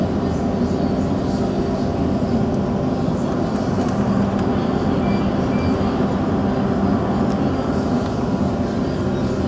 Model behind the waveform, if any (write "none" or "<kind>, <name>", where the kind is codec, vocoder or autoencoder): none